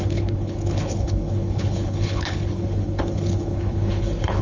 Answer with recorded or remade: remade